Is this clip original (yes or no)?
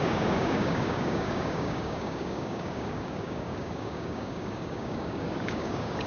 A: no